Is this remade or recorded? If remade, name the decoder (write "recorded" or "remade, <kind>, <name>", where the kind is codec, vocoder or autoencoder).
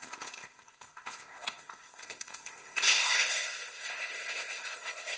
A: remade, codec, ZipCodec